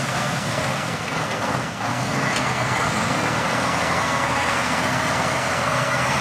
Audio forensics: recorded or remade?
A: remade